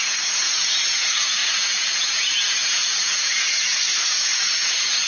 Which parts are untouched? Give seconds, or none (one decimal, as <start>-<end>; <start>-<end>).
none